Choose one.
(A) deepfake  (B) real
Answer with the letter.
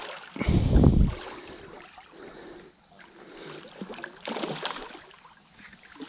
B